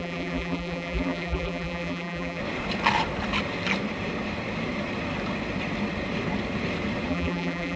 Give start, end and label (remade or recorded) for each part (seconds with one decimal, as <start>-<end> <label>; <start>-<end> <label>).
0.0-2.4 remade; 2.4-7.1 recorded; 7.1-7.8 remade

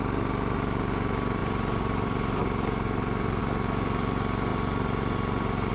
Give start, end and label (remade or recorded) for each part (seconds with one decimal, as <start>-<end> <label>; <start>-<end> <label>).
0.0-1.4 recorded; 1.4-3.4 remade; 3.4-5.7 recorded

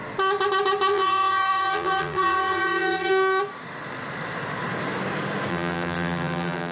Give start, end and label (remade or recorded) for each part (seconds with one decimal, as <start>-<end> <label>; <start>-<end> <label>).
0.0-0.9 recorded; 0.9-3.1 remade; 3.1-5.5 recorded; 5.5-6.7 remade

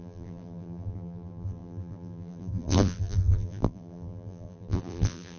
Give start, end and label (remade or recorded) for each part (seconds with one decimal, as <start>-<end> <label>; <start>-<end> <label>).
0.0-5.4 remade

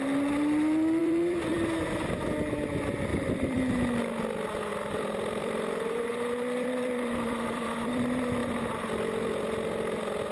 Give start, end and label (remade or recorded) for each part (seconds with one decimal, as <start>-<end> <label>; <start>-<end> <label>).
0.0-1.0 recorded; 1.0-2.2 remade; 2.2-3.1 recorded; 3.1-3.6 remade; 3.6-4.7 recorded; 4.7-8.0 remade; 8.0-8.4 recorded; 8.4-8.9 remade; 8.9-10.3 recorded

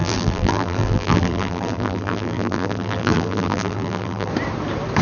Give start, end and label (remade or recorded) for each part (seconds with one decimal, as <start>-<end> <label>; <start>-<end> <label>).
0.0-4.3 remade; 4.3-5.0 recorded

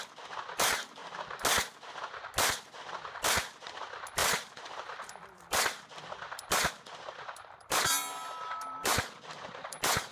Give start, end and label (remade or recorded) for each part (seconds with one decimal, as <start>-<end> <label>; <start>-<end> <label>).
0.0-1.0 remade; 1.0-2.5 recorded; 2.5-10.1 remade

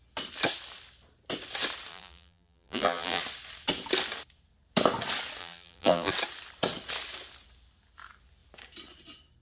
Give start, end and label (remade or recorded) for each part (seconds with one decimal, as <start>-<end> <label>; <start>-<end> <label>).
0.0-1.9 recorded; 1.9-3.2 remade; 3.2-5.4 recorded; 5.4-6.1 remade; 6.1-9.4 recorded